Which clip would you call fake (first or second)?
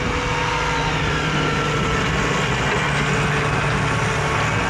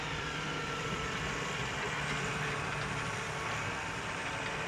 second